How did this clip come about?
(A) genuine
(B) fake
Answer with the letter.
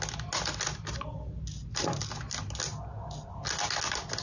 A